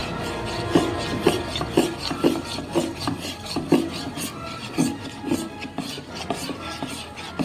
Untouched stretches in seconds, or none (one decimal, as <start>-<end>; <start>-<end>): 0.0-7.4